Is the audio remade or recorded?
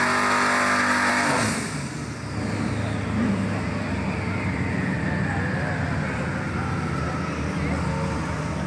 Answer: recorded